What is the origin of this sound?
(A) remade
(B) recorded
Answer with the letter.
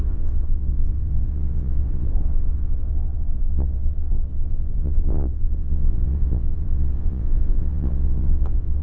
A